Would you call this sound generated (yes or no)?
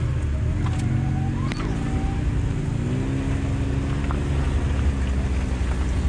no